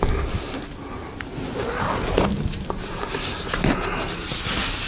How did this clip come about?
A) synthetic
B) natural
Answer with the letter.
B